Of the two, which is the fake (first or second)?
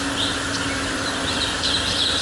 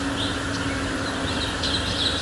first